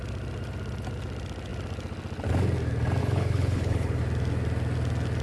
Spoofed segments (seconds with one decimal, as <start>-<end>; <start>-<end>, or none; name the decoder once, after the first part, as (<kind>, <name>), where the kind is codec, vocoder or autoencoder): 3.0-4.0 (codec, HILCodec)